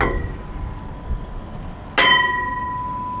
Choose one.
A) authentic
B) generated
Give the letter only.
A